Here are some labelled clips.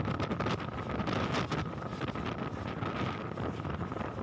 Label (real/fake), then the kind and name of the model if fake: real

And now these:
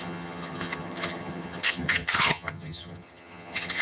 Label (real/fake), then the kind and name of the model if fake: fake, vocoder, HiFi-GAN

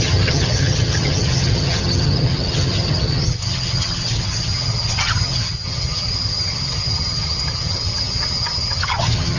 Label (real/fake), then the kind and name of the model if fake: fake, vocoder, HiFi-GAN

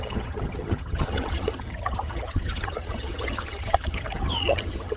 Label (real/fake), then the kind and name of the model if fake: fake, vocoder, HiFi-GAN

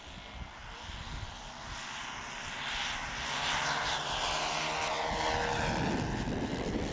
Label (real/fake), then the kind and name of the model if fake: real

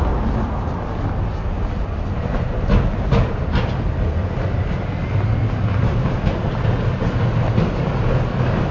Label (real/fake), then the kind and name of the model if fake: real